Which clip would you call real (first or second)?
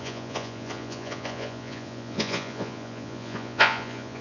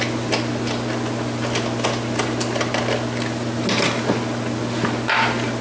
second